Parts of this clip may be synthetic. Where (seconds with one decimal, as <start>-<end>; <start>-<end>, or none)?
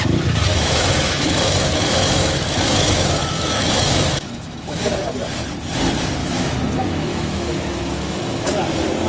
0.5-4.9; 6.2-8.5